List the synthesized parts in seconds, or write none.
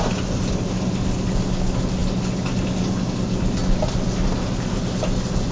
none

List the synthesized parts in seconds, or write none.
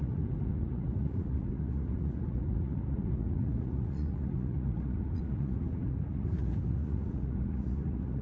0.0-8.2 (vocoder, Vocos)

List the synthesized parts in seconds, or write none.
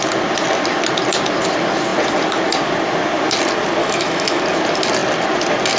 3.8-4.4 (autoencoder, DAC-VAE)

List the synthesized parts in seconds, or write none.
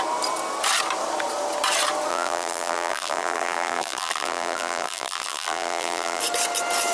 2.1-6.2 (vocoder, BigVGAN v2)